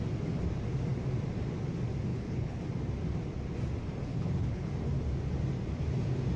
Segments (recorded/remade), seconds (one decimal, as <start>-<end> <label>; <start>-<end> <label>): 0.0-2.1 recorded; 2.1-2.6 remade; 2.6-4.1 recorded; 4.1-4.7 remade; 4.7-6.4 recorded